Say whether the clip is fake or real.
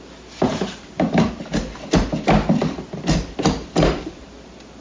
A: real